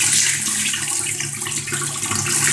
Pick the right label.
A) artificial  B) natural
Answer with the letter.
B